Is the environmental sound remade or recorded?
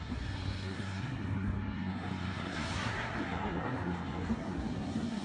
remade